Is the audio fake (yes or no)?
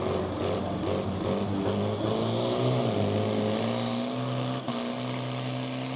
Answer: no